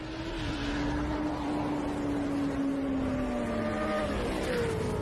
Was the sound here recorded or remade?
recorded